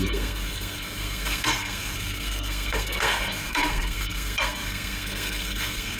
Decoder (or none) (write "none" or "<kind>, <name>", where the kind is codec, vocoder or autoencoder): codec, SNAC